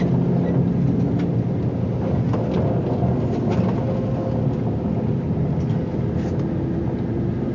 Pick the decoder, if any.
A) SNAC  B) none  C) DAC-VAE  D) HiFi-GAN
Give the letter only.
B